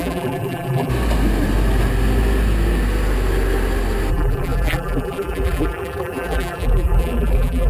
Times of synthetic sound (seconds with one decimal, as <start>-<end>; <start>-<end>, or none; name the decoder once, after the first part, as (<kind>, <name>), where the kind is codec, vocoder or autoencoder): 0.0-0.9 (vocoder, BigVGAN v2); 4.1-7.7